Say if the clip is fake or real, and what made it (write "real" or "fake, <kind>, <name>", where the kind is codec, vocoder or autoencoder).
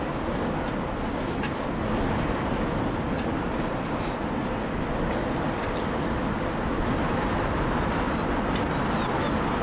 real